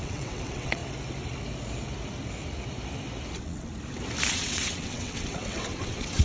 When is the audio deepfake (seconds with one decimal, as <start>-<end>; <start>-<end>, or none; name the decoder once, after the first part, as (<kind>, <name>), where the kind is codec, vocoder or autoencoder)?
0.0-0.8 (vocoder, WaveNeXt); 3.3-3.7; 4.3-6.2